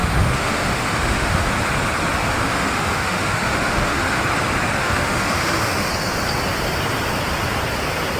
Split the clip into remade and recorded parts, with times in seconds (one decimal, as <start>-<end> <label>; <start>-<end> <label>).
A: 0.0-1.5 remade; 1.5-2.2 recorded; 2.2-4.2 remade; 4.2-4.8 recorded; 4.8-5.9 remade; 5.9-8.2 recorded